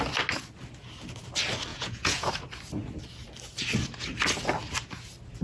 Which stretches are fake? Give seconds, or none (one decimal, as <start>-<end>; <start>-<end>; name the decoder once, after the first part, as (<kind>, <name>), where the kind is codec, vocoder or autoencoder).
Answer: 1.7-2.3 (vocoder, Vocos)